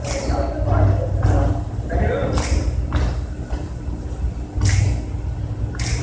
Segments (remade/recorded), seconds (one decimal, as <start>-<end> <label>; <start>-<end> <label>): 0.0-6.0 recorded